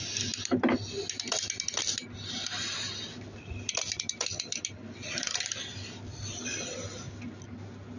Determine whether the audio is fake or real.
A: real